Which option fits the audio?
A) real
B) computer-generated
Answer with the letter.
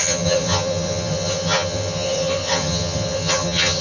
B